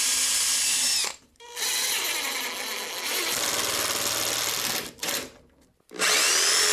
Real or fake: real